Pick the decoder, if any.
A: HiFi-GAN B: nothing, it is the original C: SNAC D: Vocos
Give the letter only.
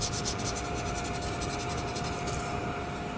B